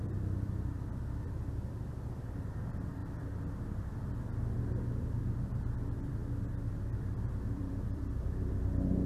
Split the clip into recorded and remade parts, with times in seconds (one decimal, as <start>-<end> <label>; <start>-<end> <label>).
0.0-6.2 remade; 6.2-7.0 recorded; 7.0-9.1 remade